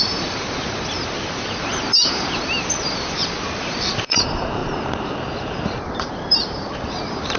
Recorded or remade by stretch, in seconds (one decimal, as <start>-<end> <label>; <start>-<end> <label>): 0.0-7.4 remade